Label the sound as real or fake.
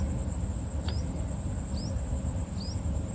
real